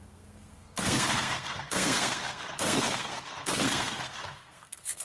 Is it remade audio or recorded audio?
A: remade